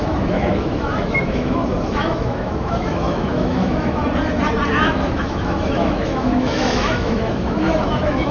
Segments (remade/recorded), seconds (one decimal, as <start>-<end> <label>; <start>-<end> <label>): 0.0-4.0 remade; 4.0-4.8 recorded; 4.8-8.3 remade